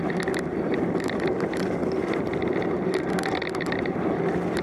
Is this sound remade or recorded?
recorded